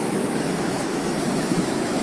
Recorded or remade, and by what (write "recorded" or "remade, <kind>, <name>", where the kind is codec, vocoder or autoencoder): remade, autoencoder, DAC-VAE